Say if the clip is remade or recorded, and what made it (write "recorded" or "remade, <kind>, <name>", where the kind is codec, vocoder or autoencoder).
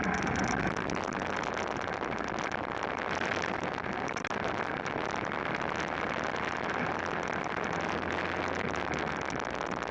recorded